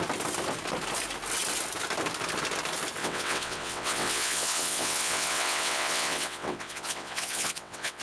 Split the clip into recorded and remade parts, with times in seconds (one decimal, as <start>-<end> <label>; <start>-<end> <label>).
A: 0.0-3.0 recorded; 3.0-8.0 remade